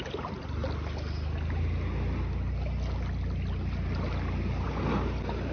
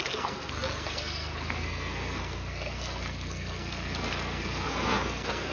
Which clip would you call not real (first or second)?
second